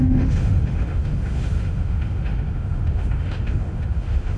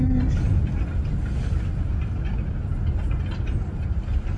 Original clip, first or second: second